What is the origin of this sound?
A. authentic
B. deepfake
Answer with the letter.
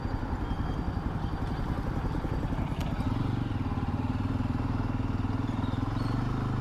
A